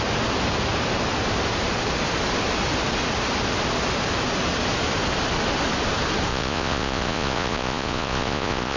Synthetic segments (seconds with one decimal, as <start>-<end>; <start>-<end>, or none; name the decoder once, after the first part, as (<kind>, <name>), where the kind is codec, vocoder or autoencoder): 6.3-8.8 (vocoder, Vocos)